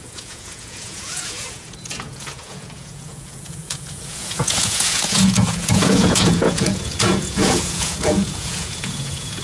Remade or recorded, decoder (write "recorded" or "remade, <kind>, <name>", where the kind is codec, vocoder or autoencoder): remade, vocoder, Vocos